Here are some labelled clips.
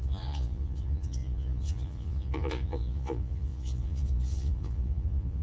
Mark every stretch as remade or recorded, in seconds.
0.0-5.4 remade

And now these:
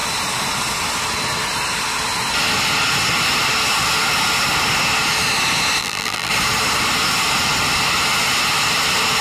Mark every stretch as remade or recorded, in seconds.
0.0-5.8 recorded; 5.8-6.3 remade; 6.3-9.2 recorded

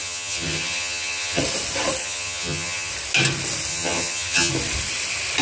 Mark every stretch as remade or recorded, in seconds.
0.0-1.4 remade; 1.4-2.0 recorded; 2.0-2.9 remade; 2.9-3.7 recorded; 3.7-4.5 remade; 4.5-5.4 recorded

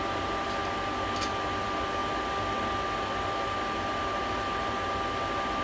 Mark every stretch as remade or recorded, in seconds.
0.0-5.6 recorded

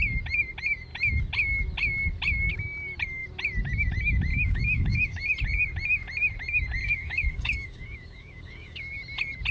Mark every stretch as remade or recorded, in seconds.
0.0-4.3 recorded; 4.3-5.3 remade; 5.3-6.8 recorded; 6.8-8.9 remade; 8.9-9.5 recorded

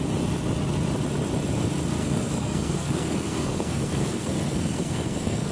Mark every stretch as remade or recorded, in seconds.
0.0-2.0 recorded; 2.0-5.5 remade